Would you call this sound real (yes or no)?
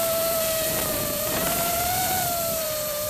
no